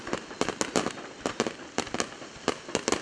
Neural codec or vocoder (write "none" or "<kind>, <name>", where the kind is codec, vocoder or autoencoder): none